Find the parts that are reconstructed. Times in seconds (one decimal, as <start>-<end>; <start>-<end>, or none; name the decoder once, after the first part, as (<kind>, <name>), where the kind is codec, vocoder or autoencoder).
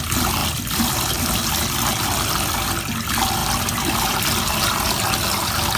0.4-1.2 (vocoder, BigVGAN v2); 3.4-4.2